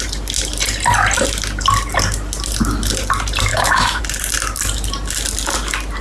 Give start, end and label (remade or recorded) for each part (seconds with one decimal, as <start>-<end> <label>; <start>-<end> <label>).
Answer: 0.0-3.5 recorded; 3.5-4.0 remade; 4.0-6.0 recorded

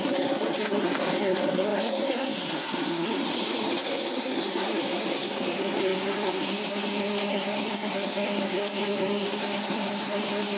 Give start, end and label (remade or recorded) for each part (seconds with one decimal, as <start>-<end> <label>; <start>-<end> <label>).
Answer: 0.0-10.6 remade

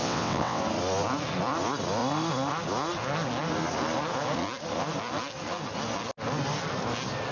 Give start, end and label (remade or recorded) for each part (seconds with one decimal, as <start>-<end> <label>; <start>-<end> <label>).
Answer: 0.0-0.6 remade; 0.6-7.3 recorded

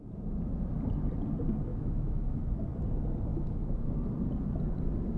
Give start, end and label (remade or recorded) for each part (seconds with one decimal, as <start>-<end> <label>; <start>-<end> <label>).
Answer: 0.0-1.7 recorded; 1.7-2.4 remade; 2.4-3.3 recorded; 3.3-3.9 remade; 3.9-5.2 recorded